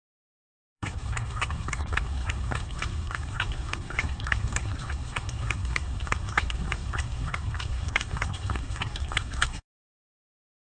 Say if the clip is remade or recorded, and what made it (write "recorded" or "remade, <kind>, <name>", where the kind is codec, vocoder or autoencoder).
remade, codec, SNAC